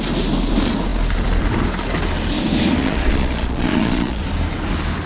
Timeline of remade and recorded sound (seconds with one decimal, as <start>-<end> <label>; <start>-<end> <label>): 0.0-2.8 recorded; 2.8-4.2 remade; 4.2-5.1 recorded